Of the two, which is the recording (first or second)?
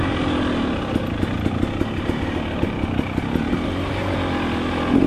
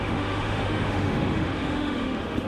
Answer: first